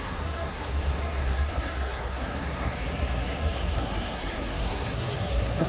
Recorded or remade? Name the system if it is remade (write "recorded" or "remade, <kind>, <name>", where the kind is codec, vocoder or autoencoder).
remade, codec, SNAC